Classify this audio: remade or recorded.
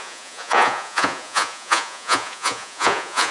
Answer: remade